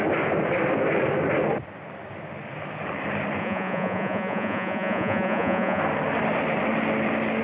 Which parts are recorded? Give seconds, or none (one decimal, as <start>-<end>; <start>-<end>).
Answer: 0.0-3.4; 5.8-7.4